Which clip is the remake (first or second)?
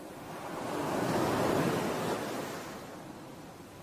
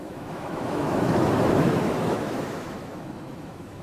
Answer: second